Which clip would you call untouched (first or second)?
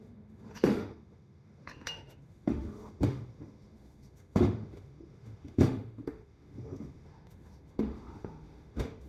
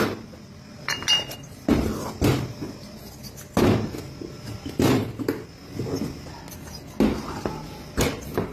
second